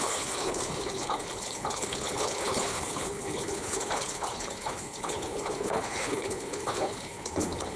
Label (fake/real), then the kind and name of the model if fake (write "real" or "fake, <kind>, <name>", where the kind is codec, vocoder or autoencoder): fake, codec, HILCodec